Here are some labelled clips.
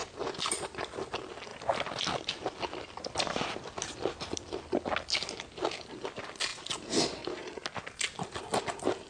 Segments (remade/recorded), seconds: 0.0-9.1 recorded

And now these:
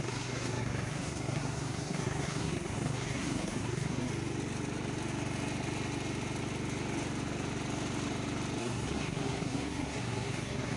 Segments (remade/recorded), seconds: 0.0-4.1 remade; 4.1-8.6 recorded; 8.6-10.8 remade

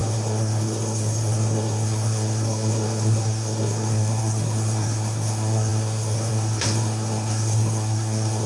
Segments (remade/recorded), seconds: 0.0-8.5 remade

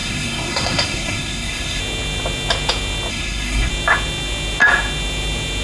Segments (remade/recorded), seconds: 0.0-1.8 remade; 1.8-3.1 recorded; 3.1-3.7 remade; 3.7-5.6 recorded

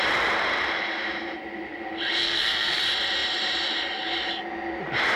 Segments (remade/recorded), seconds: 0.0-2.2 recorded; 2.2-2.8 remade; 2.8-5.2 recorded

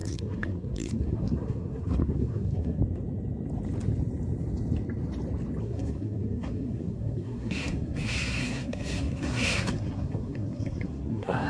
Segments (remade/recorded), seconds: 0.0-2.8 remade; 2.8-5.6 recorded; 5.6-11.5 remade

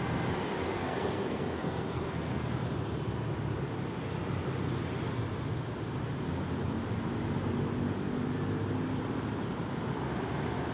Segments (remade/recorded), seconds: 0.0-0.8 recorded; 0.8-2.5 remade; 2.5-10.7 recorded

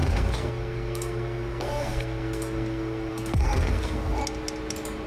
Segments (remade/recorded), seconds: 0.0-4.2 remade; 4.2-5.1 recorded